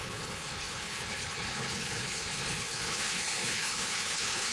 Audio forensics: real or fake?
fake